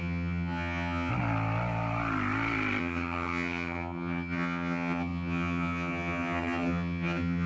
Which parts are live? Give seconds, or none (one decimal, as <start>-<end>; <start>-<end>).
1.1-2.8